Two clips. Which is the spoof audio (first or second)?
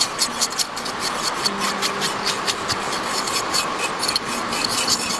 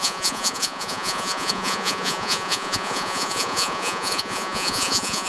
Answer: second